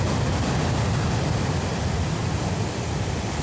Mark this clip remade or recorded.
recorded